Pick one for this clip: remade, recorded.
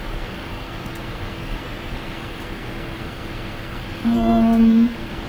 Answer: remade